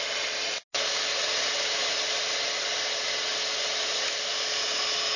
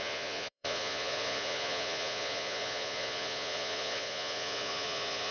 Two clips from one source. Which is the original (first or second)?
first